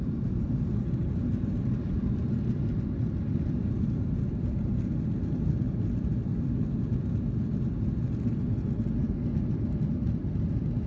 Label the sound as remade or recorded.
recorded